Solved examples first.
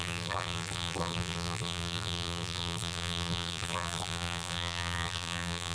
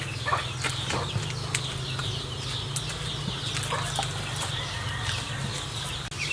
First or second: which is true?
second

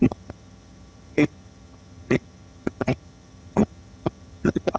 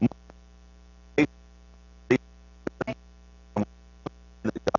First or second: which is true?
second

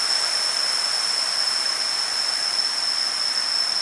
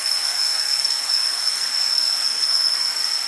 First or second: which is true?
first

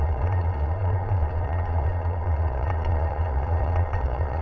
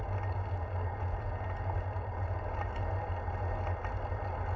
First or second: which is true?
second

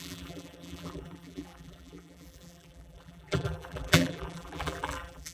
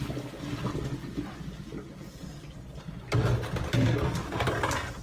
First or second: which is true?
second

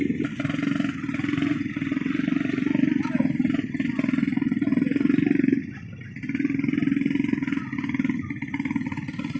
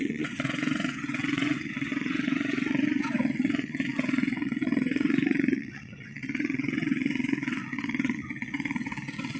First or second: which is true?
first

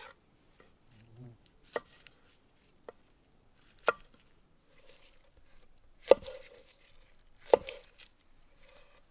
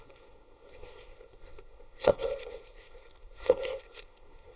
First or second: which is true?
first